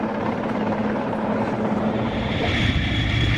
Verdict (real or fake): fake